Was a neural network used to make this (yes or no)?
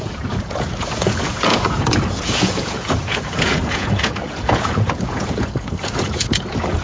yes